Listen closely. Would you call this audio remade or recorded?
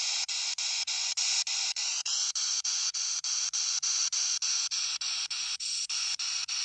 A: remade